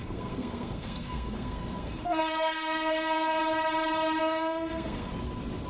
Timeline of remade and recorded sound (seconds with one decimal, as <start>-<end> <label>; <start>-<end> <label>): 0.0-3.4 remade; 3.4-4.2 recorded; 4.2-5.1 remade; 5.1-5.7 recorded